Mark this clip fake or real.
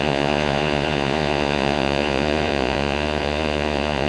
fake